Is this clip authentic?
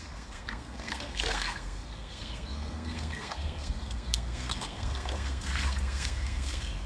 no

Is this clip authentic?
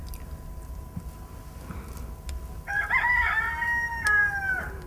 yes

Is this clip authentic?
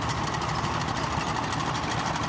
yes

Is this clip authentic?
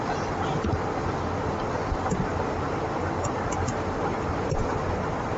yes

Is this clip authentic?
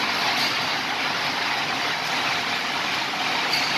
yes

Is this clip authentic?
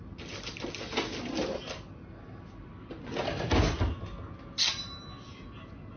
yes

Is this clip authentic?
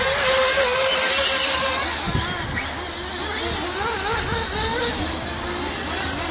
yes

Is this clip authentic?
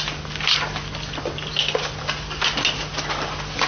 yes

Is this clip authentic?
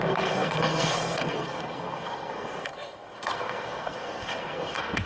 no